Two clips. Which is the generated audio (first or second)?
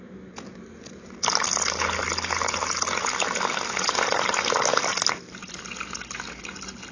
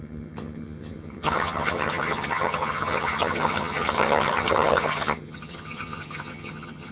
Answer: second